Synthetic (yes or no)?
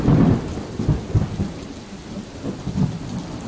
no